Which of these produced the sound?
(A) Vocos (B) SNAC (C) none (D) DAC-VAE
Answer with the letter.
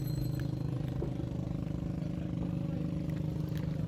C